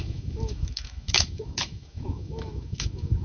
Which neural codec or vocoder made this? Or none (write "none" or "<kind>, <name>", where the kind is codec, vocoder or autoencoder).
autoencoder, DAC-VAE